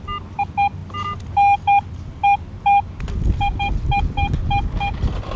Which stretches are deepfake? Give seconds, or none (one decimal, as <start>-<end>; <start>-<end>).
none